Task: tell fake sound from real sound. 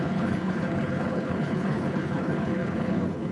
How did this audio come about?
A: fake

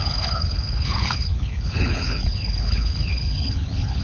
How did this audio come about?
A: fake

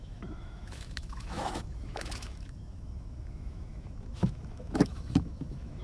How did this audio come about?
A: fake